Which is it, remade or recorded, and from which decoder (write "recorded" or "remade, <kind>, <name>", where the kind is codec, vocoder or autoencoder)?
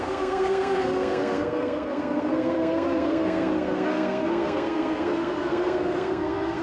remade, codec, SNAC